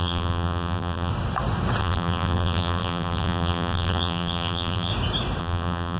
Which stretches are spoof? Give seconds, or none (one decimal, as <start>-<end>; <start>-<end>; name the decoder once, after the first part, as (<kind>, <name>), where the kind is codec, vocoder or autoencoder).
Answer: 0.0-1.1 (vocoder, BigVGAN v2); 1.8-4.9; 5.4-6.0